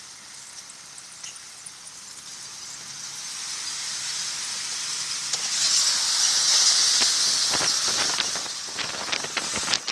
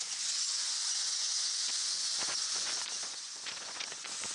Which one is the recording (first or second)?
first